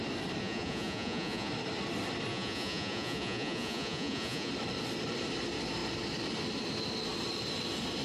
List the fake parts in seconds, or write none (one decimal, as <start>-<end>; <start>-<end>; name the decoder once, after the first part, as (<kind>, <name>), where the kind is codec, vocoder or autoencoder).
0.4-1.5 (vocoder, Vocos); 2.3-4.5